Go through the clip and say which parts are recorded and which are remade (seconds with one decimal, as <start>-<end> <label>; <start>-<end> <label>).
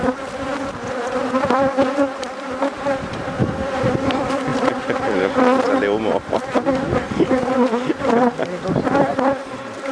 0.0-9.9 remade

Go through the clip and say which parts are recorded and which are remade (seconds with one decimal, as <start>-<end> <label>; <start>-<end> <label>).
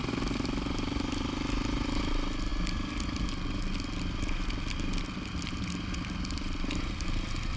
0.0-7.6 recorded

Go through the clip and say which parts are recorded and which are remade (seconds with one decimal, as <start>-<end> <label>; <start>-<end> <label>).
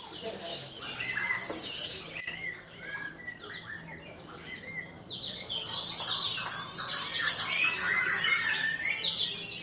0.0-7.1 recorded; 7.1-7.9 remade; 7.9-9.6 recorded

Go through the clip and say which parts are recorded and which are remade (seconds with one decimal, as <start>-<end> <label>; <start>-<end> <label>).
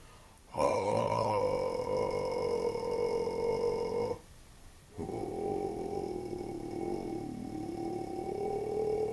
0.0-0.5 recorded; 0.5-1.4 remade; 1.4-9.1 recorded